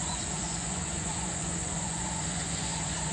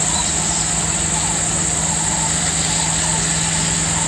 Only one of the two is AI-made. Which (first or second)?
first